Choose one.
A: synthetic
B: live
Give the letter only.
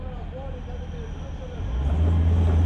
B